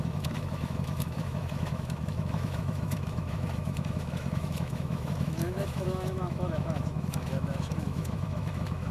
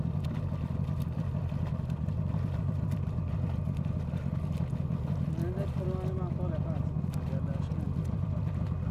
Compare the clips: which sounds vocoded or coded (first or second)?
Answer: first